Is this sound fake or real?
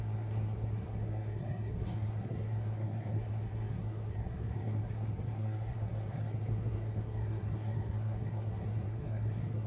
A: fake